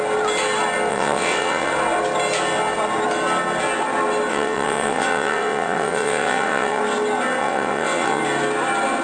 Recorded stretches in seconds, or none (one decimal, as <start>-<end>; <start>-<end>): 0.0-0.9; 1.7-4.3; 6.8-7.4; 8.2-9.0